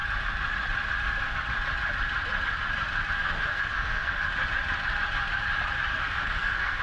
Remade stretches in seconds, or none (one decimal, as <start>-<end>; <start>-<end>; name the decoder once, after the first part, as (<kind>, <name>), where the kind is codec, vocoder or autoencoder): 3.2-4.3 (codec, SNAC); 5.9-6.8